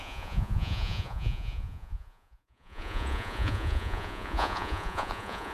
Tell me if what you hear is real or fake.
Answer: fake